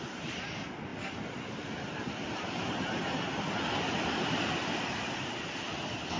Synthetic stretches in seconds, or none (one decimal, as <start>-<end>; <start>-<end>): 0.9-2.6